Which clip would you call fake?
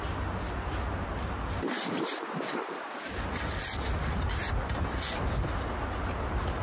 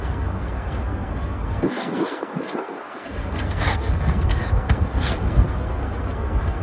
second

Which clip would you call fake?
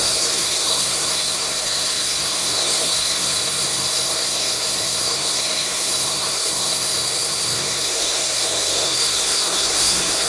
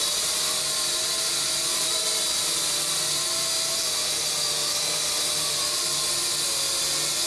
first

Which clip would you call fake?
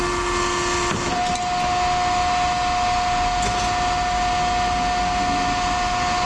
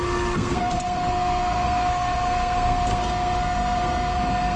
second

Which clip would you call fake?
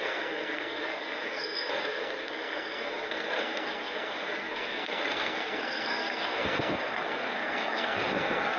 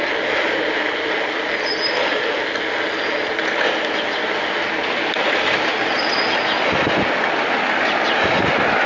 first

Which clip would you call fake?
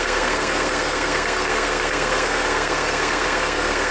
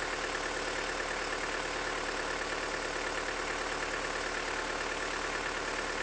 first